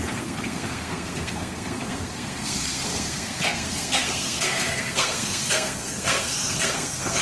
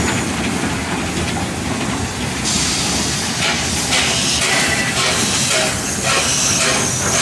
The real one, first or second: second